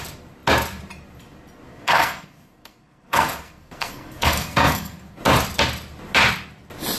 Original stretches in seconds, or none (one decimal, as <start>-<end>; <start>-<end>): 0.0-1.7; 5.2-7.0